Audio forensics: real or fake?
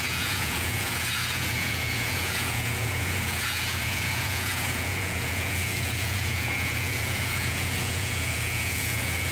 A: fake